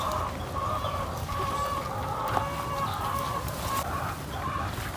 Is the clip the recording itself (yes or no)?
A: yes